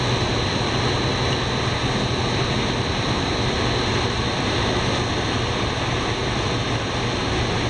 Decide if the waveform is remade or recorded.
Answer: recorded